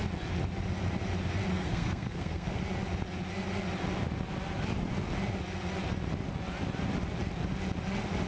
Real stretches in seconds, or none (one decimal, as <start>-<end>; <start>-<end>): 0.0-1.5; 2.6-8.3

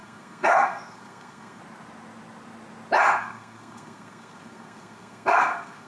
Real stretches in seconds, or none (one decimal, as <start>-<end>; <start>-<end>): 1.6-3.2

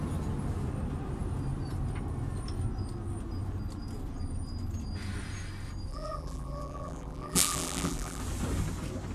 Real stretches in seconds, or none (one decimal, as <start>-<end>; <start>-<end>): 0.0-5.9; 8.2-9.1

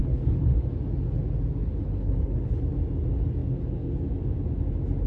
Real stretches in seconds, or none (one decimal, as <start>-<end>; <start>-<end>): 0.7-1.6; 2.6-5.1